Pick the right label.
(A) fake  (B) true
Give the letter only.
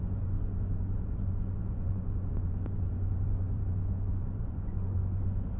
A